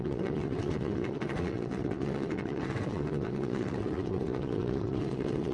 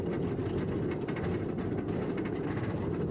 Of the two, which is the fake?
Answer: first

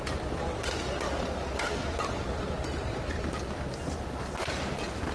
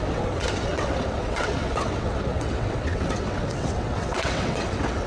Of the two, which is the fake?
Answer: second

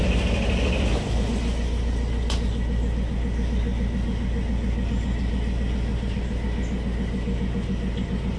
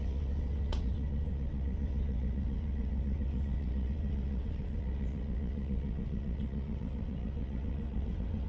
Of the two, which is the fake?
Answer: second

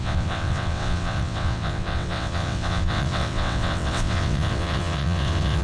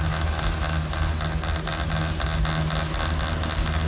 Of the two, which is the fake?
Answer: first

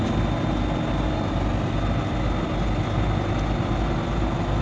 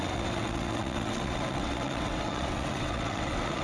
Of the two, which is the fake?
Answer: second